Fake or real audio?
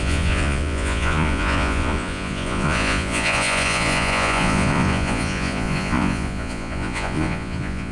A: fake